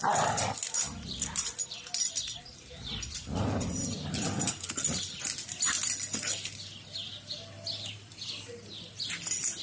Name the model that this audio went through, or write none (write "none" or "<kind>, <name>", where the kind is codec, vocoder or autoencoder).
none